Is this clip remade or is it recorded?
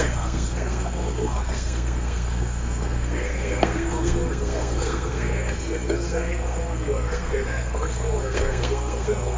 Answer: remade